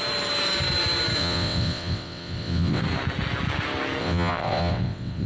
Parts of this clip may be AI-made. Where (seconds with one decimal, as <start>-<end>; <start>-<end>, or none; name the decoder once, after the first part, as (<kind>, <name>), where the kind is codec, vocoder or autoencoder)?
1.2-2.8 (vocoder, WaveNeXt); 4.0-5.3